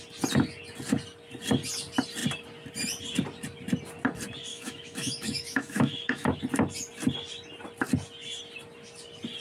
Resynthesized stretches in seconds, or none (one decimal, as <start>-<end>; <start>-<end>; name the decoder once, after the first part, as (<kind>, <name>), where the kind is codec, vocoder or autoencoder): 4.5-6.4 (autoencoder, DAC-VAE)